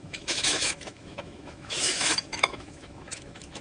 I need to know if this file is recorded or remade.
remade